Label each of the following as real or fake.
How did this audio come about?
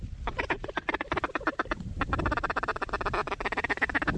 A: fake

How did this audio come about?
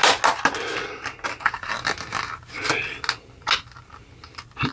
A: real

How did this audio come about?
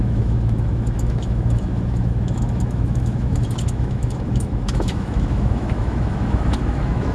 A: fake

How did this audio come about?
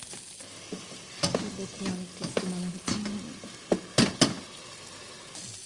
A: real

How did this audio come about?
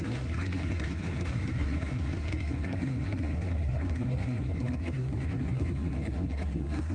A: fake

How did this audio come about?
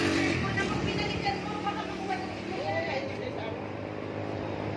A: fake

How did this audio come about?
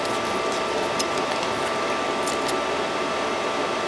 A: real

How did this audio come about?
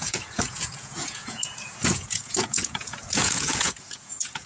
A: fake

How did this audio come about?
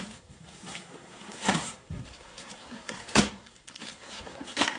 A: fake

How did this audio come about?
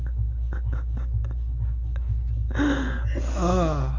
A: real